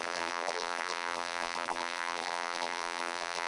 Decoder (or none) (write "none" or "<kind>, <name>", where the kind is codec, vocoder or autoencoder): vocoder, BigVGAN v2